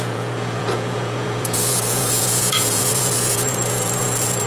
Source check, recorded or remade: remade